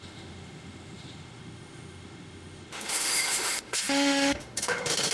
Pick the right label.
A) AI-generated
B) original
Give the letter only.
A